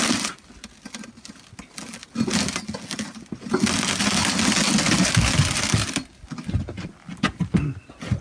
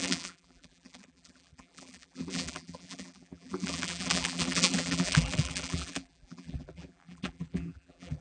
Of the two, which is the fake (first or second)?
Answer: second